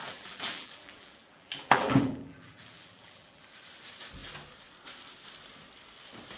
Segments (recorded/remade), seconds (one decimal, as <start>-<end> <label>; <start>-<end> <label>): 0.0-3.4 remade; 3.4-6.4 recorded